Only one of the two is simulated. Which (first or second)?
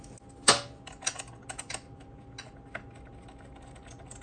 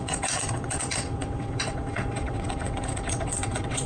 second